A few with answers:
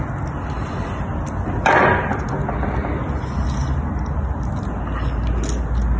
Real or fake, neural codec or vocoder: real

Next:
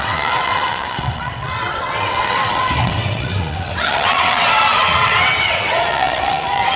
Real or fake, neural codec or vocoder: fake, vocoder, WaveNeXt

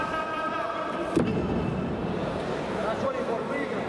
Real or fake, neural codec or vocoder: real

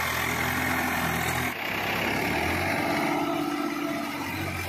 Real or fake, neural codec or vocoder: real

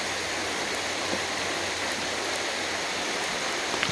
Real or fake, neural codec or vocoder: real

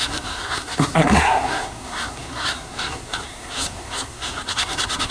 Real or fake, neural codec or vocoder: fake, codec, SNAC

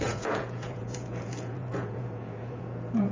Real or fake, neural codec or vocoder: fake, vocoder, Vocos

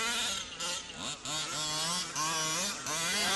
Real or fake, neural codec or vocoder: real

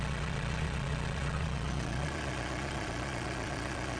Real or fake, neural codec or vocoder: fake, vocoder, Vocos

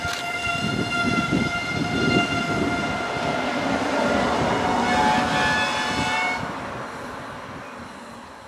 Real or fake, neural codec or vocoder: real